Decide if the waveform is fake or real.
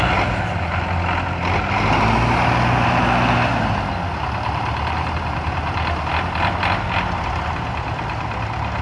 real